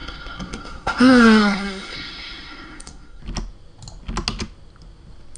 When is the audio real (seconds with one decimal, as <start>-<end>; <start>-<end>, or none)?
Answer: 3.2-5.4